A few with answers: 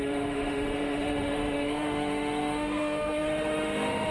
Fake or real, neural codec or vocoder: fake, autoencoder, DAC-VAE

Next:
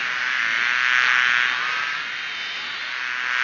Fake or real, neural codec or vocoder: real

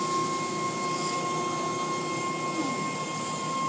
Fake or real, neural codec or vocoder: real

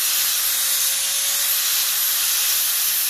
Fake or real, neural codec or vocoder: real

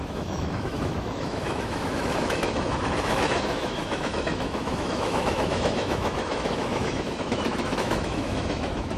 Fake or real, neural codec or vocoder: fake, autoencoder, DAC-VAE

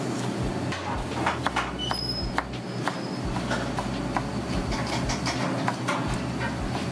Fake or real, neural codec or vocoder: real